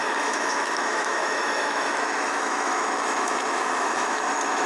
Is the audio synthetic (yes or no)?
yes